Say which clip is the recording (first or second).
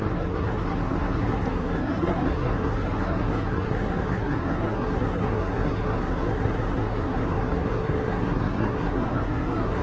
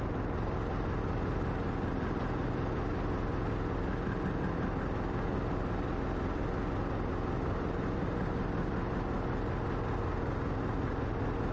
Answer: second